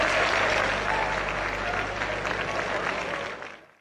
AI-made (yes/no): no